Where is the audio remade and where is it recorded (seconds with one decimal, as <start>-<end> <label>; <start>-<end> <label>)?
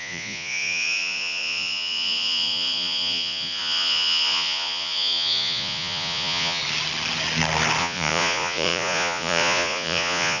0.0-6.6 remade; 6.6-7.8 recorded; 7.8-10.4 remade